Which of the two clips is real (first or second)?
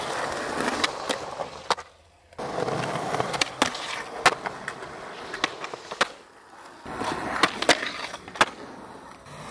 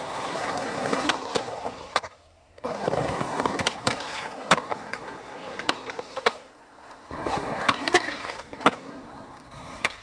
first